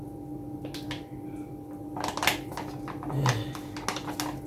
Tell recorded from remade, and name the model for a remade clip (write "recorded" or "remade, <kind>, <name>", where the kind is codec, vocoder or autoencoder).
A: recorded